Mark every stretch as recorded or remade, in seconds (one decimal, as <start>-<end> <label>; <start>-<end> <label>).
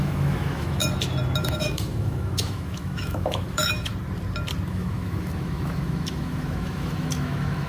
0.0-0.8 remade; 0.8-1.4 recorded; 1.4-3.9 remade; 3.9-4.7 recorded; 4.7-7.7 remade